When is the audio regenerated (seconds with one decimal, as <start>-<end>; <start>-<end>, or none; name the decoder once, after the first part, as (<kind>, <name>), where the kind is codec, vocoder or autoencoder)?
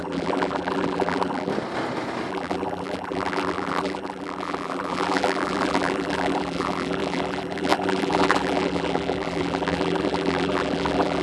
0.0-1.5 (vocoder, BigVGAN v2); 2.3-11.2